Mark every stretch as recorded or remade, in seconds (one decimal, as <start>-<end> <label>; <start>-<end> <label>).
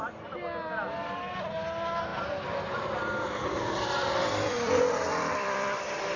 0.0-2.1 recorded; 2.1-5.8 remade; 5.8-6.2 recorded